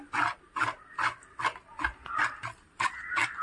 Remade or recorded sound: recorded